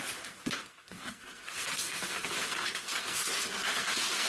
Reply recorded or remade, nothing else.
remade